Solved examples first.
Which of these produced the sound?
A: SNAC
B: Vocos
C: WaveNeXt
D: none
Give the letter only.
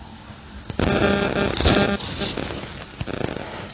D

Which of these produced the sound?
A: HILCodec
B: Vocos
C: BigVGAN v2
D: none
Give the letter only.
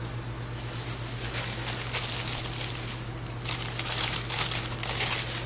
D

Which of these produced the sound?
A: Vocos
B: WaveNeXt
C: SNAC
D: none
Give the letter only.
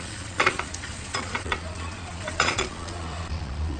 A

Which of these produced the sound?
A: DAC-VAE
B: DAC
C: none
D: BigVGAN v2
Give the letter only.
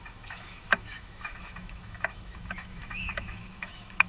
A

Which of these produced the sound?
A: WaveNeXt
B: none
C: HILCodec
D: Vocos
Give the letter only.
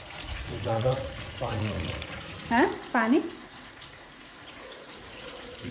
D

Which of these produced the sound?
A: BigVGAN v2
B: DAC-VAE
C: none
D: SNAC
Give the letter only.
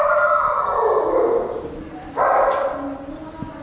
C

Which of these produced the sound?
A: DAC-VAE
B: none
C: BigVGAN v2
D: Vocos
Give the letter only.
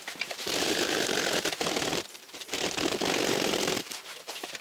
C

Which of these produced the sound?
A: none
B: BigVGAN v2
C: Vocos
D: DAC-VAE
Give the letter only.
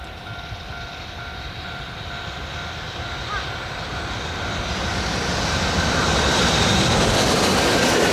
A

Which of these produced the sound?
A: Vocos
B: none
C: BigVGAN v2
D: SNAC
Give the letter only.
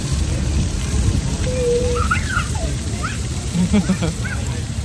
C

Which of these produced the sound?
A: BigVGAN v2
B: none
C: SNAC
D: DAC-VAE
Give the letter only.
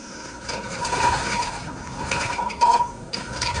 C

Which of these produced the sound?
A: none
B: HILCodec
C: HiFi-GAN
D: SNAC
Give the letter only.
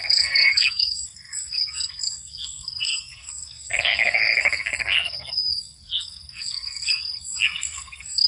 D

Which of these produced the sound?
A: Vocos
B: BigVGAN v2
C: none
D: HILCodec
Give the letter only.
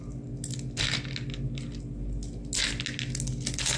C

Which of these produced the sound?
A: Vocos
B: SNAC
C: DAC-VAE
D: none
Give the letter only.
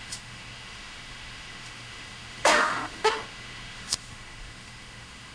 C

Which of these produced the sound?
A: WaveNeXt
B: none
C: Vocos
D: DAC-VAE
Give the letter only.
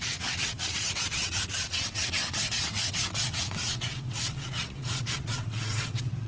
A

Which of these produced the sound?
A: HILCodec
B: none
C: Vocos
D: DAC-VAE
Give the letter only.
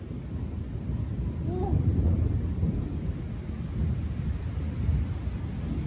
B